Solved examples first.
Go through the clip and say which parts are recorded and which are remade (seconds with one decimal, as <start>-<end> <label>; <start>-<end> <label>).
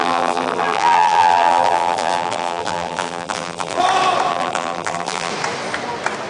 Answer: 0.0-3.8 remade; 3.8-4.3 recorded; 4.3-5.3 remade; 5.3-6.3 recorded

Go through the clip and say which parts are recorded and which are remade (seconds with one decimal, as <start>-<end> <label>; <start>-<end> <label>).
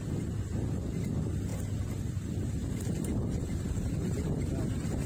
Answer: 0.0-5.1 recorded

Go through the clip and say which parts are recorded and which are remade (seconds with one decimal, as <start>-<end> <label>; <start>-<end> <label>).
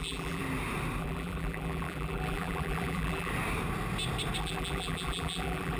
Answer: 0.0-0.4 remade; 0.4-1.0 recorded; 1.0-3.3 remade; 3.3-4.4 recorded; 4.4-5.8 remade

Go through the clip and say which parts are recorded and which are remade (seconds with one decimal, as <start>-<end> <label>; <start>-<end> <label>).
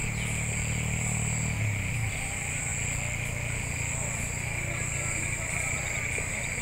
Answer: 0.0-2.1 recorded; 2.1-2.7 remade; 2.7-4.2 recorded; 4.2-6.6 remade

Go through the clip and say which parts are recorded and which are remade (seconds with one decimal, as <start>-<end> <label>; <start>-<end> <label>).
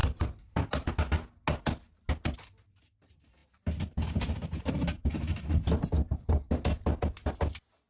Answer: 0.0-0.9 remade; 0.9-7.9 recorded